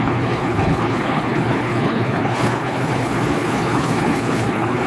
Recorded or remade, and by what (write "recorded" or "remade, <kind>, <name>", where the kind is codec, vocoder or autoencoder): remade, codec, HILCodec